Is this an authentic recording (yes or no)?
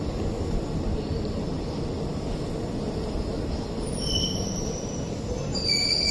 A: yes